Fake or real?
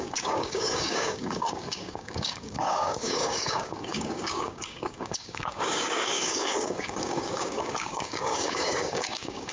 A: fake